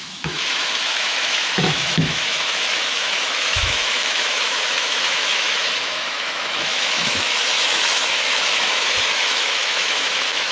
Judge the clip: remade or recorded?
remade